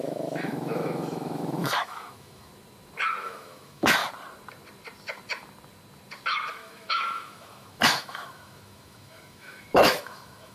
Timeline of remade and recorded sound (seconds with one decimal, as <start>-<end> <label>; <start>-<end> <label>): 0.0-2.5 remade; 2.5-3.2 recorded; 3.2-4.0 remade; 4.0-6.5 recorded; 6.5-10.5 remade